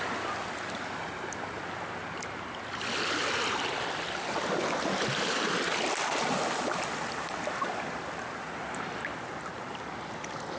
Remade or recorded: recorded